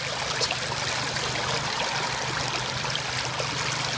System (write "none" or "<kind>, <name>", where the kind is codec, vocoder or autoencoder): none